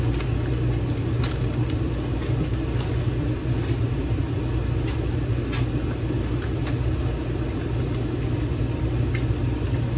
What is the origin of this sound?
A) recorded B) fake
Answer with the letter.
A